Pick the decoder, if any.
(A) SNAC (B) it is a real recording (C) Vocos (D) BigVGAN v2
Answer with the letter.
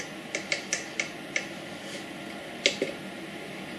B